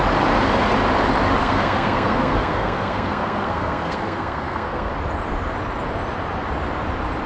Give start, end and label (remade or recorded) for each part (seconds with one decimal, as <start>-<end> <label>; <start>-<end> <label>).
0.0-1.4 recorded; 1.4-4.9 remade; 4.9-7.3 recorded